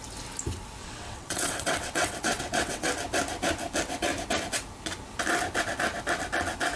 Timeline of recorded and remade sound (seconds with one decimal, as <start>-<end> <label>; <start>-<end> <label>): 0.0-0.8 recorded; 0.8-2.9 remade; 2.9-6.8 recorded